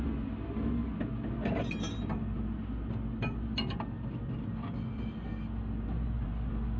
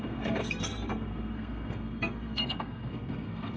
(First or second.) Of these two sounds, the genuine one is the first